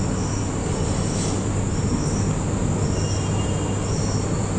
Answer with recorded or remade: recorded